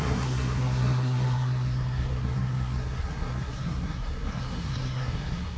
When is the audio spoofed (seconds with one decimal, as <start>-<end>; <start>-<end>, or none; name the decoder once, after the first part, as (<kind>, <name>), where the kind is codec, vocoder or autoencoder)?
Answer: 0.0-5.6 (codec, SNAC)